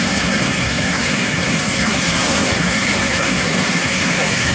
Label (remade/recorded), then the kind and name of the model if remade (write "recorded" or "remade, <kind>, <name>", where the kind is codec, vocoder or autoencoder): remade, codec, SNAC